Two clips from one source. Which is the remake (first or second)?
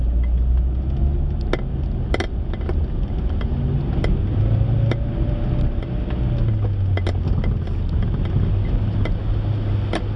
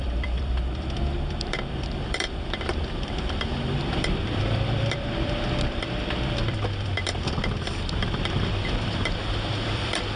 second